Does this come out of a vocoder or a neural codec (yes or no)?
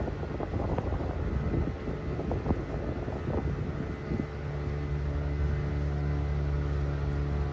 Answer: no